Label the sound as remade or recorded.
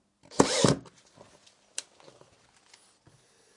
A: recorded